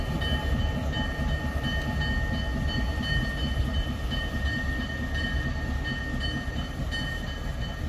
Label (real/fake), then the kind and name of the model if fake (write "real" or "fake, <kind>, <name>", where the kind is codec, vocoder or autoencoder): real